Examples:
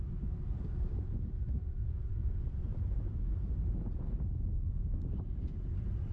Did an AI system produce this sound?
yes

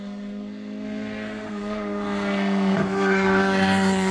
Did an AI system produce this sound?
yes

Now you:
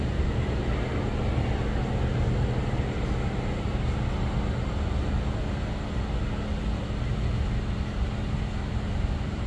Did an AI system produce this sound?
no